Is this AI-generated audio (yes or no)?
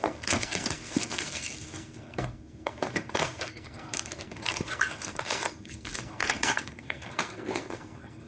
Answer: yes